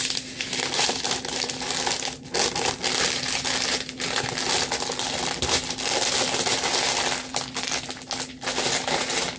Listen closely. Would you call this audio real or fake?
real